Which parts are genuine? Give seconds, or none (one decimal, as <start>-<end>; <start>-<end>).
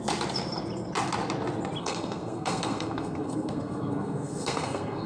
0.0-1.8